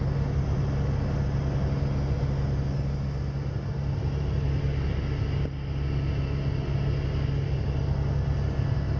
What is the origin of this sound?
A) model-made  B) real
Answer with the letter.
B